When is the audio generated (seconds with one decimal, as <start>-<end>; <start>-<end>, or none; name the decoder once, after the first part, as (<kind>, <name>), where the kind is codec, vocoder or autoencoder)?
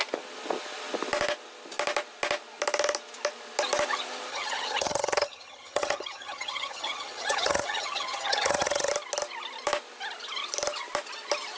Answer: 4.3-8.9 (vocoder, HiFi-GAN)